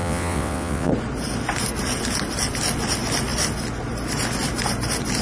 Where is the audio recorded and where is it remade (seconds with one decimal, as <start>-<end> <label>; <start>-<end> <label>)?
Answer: 0.0-0.9 remade; 0.9-5.2 recorded